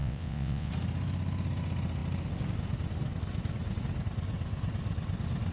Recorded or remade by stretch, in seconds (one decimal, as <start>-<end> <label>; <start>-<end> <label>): 0.0-0.7 remade; 0.7-5.5 recorded